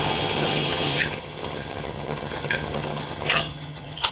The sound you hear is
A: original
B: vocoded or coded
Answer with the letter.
B